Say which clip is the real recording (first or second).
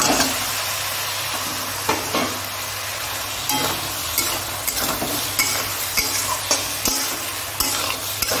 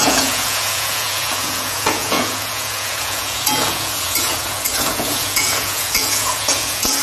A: first